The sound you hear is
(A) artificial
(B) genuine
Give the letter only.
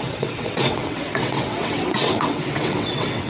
A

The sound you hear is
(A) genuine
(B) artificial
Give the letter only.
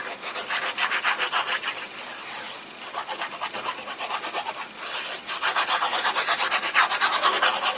A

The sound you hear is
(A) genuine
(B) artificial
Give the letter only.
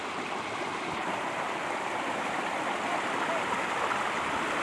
A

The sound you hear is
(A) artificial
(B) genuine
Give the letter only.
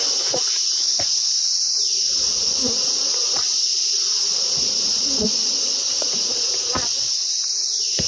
B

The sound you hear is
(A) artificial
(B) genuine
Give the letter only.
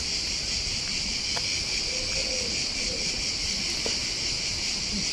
B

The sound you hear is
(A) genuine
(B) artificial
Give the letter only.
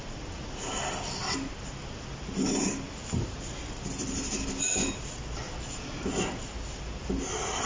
A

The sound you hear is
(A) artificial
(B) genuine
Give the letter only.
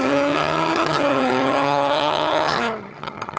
A